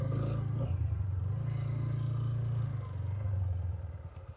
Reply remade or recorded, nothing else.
recorded